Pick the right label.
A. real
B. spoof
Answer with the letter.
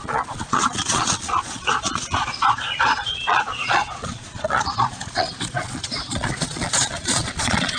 B